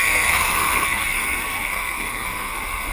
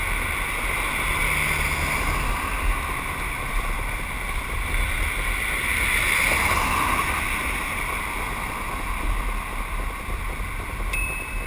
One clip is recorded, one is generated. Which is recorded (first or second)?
second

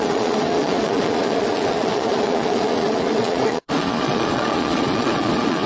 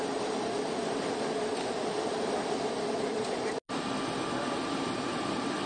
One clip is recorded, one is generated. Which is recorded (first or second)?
second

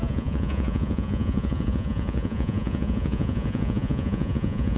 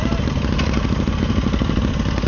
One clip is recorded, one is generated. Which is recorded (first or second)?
second